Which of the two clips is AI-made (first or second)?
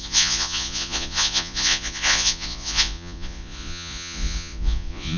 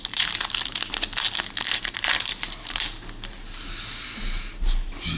first